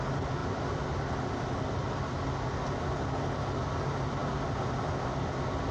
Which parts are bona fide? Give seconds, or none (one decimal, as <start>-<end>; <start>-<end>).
0.0-5.7